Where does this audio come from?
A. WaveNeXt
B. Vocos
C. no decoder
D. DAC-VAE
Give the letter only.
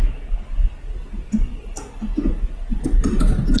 C